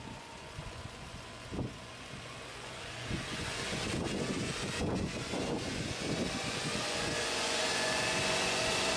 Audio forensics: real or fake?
fake